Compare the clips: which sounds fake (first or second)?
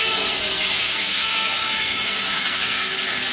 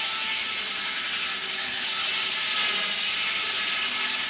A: first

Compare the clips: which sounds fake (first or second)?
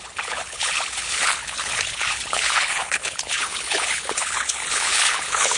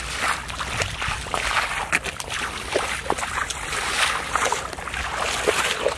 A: first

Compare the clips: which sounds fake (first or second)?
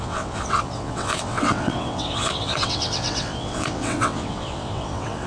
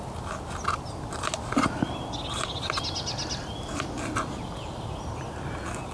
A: first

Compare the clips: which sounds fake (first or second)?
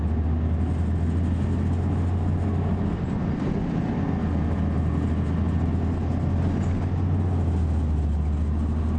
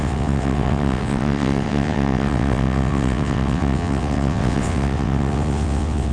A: second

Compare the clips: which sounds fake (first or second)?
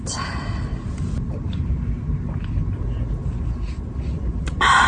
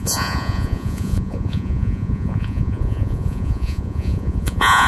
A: second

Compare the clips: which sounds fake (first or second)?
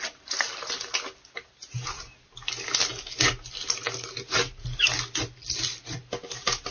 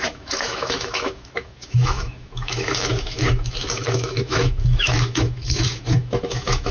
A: second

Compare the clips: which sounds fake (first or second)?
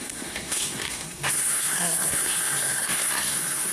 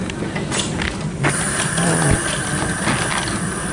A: first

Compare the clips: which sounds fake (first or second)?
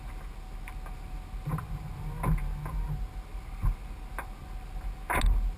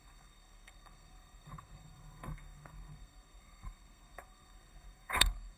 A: second